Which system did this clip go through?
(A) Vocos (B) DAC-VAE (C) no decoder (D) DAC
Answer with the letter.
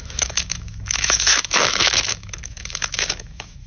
B